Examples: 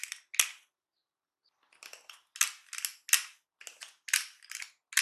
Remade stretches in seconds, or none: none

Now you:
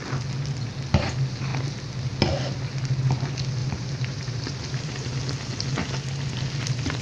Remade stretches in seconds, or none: 3.6-5.2

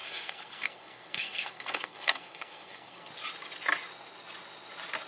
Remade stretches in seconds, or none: 0.0-3.1

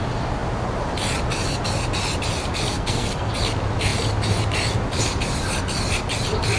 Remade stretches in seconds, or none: 2.7-3.3

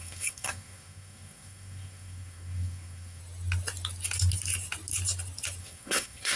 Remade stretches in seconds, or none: 0.0-3.2; 5.6-6.4